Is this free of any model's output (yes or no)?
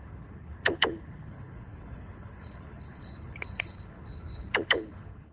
no